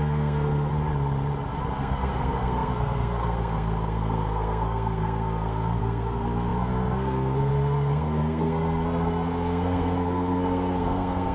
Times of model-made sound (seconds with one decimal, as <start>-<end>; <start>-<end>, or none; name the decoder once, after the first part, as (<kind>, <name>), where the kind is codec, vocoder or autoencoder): 0.0-0.7 (codec, SNAC); 1.8-11.3